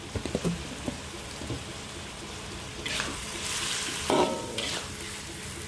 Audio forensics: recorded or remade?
remade